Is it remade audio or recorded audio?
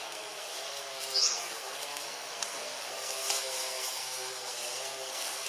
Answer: remade